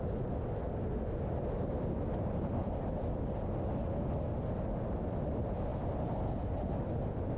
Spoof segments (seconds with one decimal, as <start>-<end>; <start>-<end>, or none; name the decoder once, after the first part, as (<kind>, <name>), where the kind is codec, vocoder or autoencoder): none